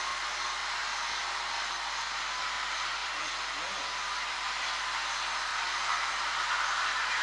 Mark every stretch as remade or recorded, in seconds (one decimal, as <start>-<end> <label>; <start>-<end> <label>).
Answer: 0.0-3.0 recorded; 3.0-4.8 remade; 4.8-7.2 recorded